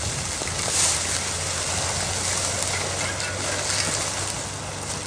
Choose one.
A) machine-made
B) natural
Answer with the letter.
B